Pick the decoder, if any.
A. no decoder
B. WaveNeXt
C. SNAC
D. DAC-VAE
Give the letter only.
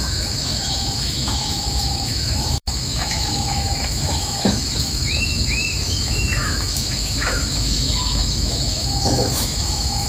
D